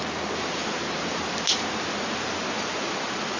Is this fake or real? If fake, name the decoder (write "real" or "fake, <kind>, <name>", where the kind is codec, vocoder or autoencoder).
real